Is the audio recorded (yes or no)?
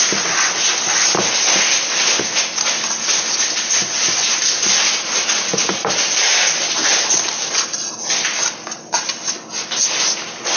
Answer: yes